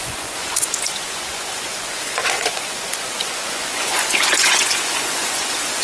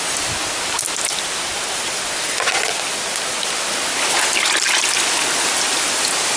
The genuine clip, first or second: second